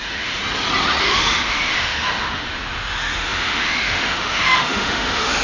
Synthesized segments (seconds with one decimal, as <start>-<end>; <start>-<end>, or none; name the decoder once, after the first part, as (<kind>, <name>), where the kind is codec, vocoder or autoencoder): 0.0-0.4 (autoencoder, DAC-VAE); 1.0-5.4